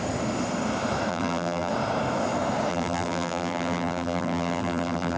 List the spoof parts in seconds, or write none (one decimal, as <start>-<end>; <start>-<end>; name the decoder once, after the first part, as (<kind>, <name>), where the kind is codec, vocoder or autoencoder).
1.1-1.7 (vocoder, BigVGAN v2); 2.7-5.2